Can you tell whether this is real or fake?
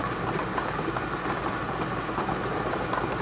real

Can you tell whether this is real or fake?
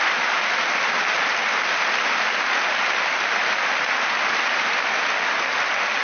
real